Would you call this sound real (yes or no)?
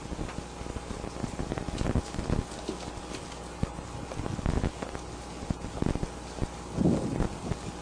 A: yes